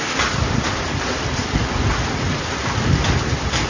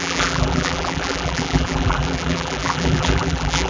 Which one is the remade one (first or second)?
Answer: second